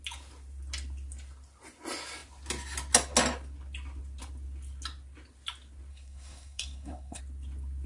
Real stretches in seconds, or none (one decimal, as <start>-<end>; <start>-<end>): 0.0-5.9; 7.2-7.9